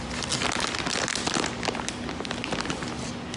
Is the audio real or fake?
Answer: real